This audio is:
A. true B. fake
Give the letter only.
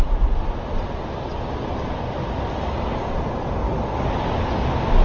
A